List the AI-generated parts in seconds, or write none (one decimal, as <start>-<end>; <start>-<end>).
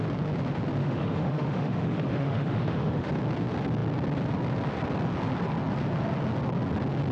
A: 0.8-3.1